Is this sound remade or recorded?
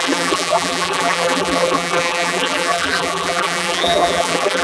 remade